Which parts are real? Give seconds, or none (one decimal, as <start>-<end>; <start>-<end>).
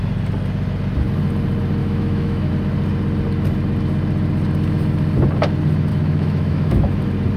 0.0-1.8; 2.5-5.9; 7.0-7.4